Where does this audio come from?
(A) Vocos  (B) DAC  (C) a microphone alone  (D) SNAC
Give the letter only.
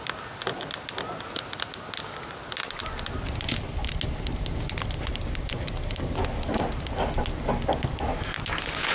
C